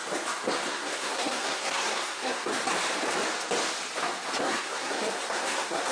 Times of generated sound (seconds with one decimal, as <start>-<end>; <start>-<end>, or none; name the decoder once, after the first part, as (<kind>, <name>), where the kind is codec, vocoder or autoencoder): 0.7-2.5 (codec, SNAC); 4.4-5.9